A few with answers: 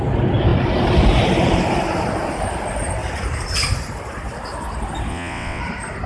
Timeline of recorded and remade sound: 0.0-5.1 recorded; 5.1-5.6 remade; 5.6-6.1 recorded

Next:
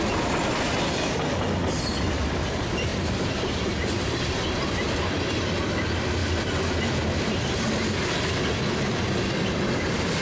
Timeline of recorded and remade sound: 0.0-10.2 recorded

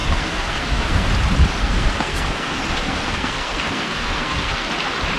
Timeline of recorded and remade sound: 0.0-1.1 remade; 1.1-1.6 recorded; 1.6-4.7 remade; 4.7-5.2 recorded

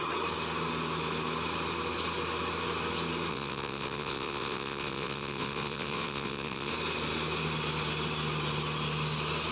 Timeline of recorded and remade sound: 0.0-3.3 recorded; 3.3-6.7 remade; 6.7-9.5 recorded

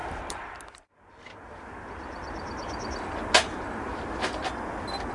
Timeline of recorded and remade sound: 0.0-5.1 remade

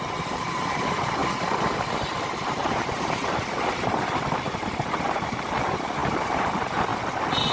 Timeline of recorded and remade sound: 0.0-6.9 remade; 6.9-7.5 recorded

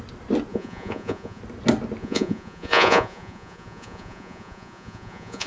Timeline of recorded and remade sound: 0.0-0.5 recorded; 0.5-1.4 remade; 1.4-2.0 recorded; 2.0-5.5 remade

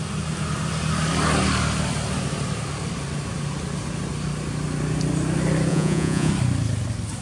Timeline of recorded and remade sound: 0.0-5.7 recorded; 5.7-6.3 remade; 6.3-7.2 recorded